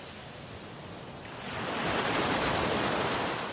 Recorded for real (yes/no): yes